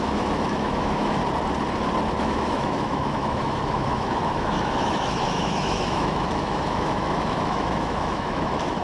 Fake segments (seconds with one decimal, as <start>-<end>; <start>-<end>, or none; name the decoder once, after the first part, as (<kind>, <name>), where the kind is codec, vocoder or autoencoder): 0.0-1.2 (autoencoder, DAC-VAE); 2.2-8.8